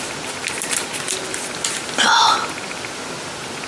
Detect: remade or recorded recorded